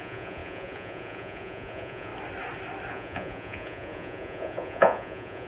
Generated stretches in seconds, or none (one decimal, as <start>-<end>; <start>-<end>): 0.0-2.1; 2.9-5.5